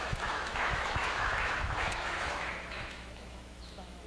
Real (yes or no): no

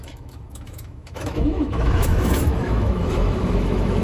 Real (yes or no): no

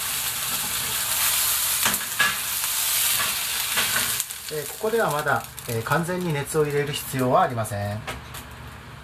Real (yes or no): yes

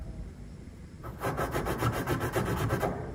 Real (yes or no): yes